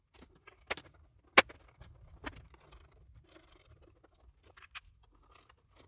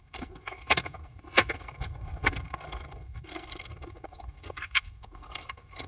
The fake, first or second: second